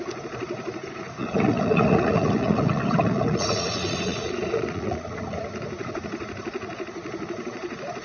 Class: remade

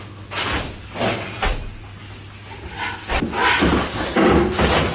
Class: recorded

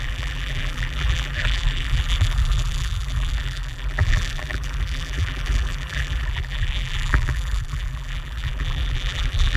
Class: remade